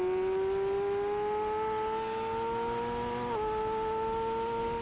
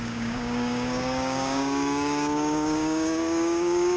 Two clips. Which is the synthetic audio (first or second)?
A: second